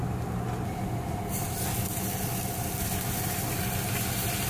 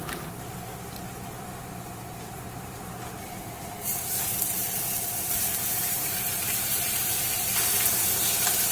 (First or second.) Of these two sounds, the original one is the first